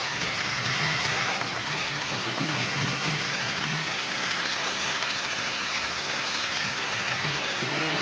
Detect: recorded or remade remade